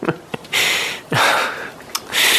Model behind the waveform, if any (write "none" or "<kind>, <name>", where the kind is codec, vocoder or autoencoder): none